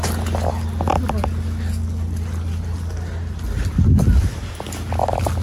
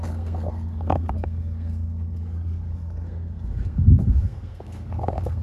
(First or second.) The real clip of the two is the first